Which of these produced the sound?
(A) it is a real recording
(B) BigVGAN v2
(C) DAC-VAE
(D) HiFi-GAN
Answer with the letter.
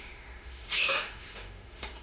C